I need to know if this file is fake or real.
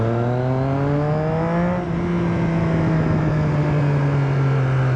real